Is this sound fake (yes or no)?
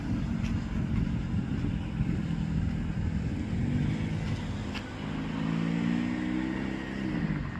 no